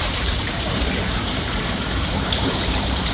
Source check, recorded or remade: remade